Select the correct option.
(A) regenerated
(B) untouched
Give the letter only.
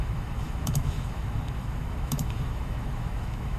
A